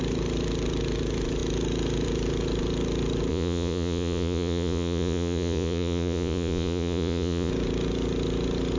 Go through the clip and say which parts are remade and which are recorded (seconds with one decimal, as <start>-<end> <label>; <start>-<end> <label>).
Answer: 0.0-3.3 recorded; 3.3-7.5 remade; 7.5-8.8 recorded